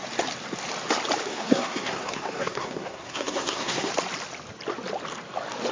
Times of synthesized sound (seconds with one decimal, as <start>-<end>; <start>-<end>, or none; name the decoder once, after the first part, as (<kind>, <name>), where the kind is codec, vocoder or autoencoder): 1.3-3.9 (codec, SNAC)